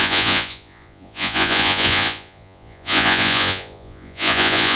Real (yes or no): no